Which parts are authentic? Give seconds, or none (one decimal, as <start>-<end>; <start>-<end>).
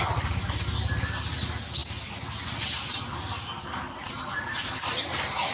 0.0-5.5